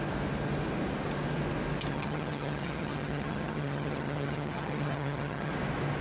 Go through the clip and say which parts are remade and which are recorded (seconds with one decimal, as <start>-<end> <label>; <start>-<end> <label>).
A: 0.0-1.9 recorded; 1.9-5.5 remade; 5.5-6.0 recorded